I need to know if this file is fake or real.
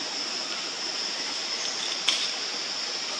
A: real